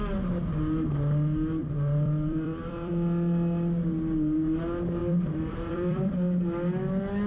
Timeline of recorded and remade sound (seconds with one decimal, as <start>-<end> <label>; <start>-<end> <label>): 0.0-1.6 recorded; 1.6-2.9 remade; 2.9-5.0 recorded; 5.0-6.1 remade; 6.1-7.3 recorded